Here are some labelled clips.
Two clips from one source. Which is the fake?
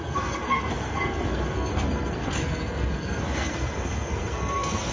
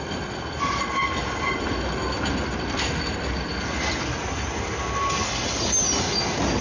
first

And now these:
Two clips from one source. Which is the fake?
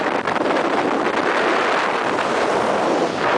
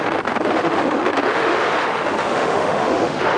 second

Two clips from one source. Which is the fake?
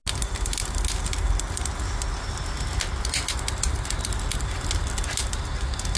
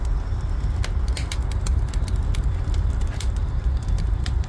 second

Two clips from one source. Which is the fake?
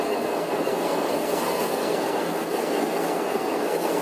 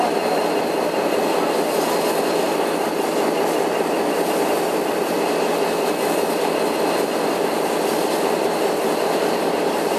first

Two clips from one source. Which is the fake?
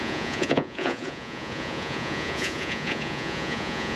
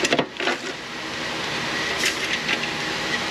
first